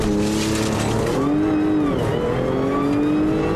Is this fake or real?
real